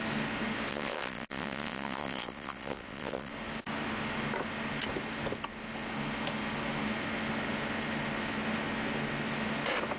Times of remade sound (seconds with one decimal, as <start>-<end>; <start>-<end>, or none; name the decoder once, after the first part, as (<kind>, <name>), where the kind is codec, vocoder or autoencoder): 0.7-3.3 (vocoder, WaveNeXt)